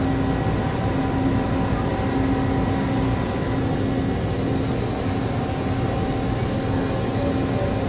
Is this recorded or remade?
recorded